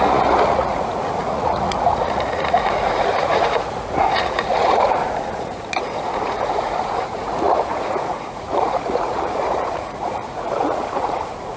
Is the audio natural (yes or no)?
no